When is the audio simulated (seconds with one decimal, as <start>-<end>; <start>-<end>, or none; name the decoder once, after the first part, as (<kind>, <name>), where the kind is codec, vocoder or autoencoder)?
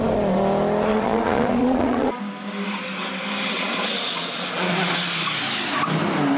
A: 0.9-2.2 (vocoder, Vocos); 3.5-4.7